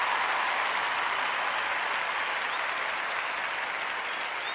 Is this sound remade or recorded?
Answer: recorded